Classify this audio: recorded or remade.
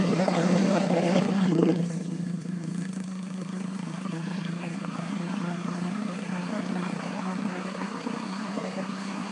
remade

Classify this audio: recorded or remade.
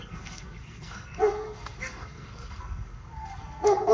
remade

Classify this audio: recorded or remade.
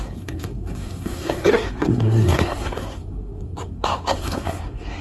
remade